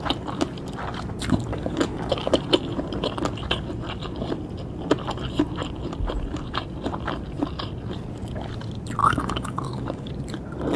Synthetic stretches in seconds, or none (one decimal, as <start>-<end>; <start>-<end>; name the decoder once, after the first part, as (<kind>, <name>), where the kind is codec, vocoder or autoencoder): 1.5-2.4 (codec, DAC); 9.0-10.1